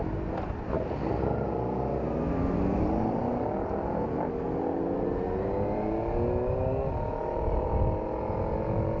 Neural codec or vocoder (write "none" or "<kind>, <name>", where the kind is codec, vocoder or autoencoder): none